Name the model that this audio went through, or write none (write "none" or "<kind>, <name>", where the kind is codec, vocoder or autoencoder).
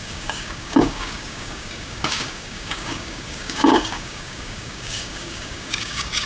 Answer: codec, DAC